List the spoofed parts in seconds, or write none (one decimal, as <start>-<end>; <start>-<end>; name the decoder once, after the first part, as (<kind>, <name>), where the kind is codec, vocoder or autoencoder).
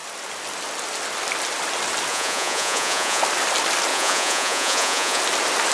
2.1-3.2 (vocoder, Vocos); 3.9-5.2